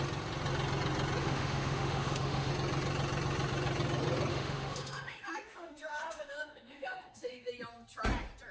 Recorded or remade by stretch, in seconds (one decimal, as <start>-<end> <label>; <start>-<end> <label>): 0.0-1.2 recorded; 1.2-2.5 remade; 2.5-4.3 recorded; 4.3-7.5 remade; 7.5-8.5 recorded